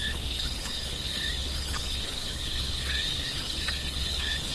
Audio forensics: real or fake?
fake